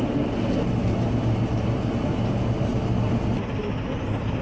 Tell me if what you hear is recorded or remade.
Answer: recorded